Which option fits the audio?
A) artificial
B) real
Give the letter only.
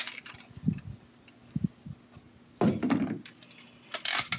B